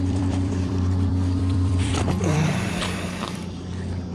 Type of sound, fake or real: fake